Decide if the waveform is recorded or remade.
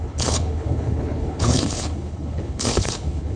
remade